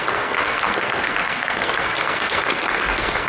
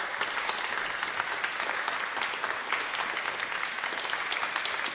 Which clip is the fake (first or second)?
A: first